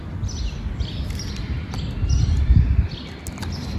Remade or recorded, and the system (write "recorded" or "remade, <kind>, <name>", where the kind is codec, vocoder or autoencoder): recorded